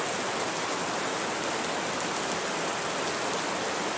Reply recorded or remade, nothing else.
recorded